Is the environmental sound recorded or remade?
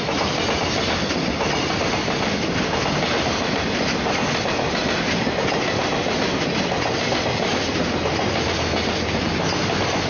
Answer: recorded